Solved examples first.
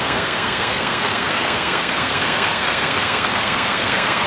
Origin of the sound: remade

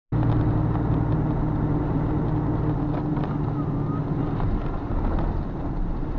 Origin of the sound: recorded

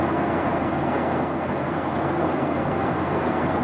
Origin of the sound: remade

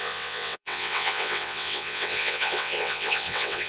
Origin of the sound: remade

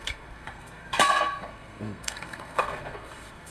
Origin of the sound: remade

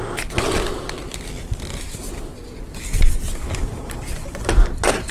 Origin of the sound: recorded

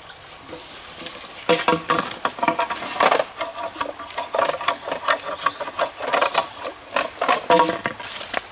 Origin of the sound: recorded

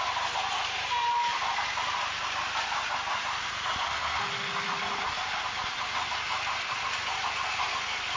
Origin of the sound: recorded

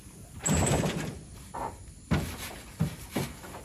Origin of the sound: recorded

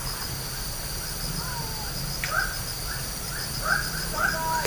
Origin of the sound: recorded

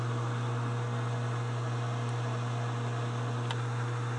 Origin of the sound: recorded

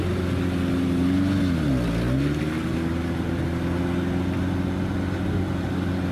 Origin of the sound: recorded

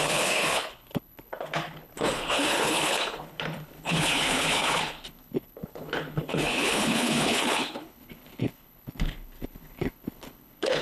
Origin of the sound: remade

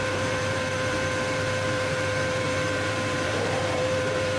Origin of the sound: remade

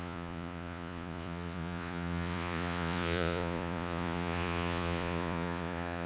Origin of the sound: remade